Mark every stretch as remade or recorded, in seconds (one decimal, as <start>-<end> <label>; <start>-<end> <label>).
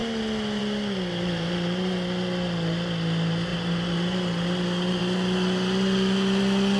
0.0-3.5 recorded; 3.5-5.0 remade; 5.0-6.8 recorded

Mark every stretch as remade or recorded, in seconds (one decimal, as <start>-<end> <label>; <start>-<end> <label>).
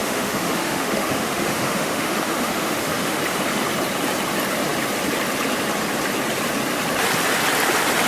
0.0-3.2 remade; 3.2-8.1 recorded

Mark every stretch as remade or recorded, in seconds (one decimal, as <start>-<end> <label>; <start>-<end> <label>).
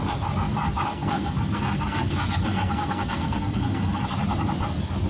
0.0-0.9 recorded; 0.9-4.0 remade; 4.0-5.1 recorded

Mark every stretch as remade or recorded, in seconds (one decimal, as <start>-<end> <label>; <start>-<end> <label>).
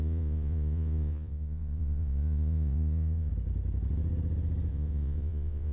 0.0-3.3 remade; 3.3-4.7 recorded; 4.7-5.7 remade